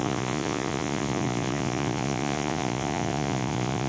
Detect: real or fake fake